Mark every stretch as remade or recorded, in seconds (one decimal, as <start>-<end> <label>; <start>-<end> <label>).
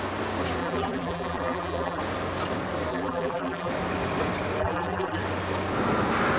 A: 0.0-0.6 recorded; 0.6-2.0 remade; 2.0-2.9 recorded; 2.9-3.7 remade; 3.7-4.6 recorded; 4.6-5.2 remade; 5.2-6.4 recorded